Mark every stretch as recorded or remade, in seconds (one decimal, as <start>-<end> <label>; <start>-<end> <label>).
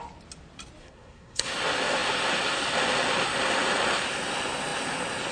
0.0-0.8 recorded; 0.8-1.5 remade; 1.5-5.3 recorded